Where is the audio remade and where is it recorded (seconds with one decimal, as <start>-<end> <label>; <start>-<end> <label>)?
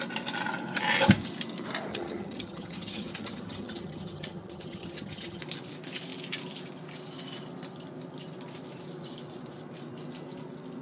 0.0-1.9 recorded; 1.9-5.4 remade; 5.4-10.8 recorded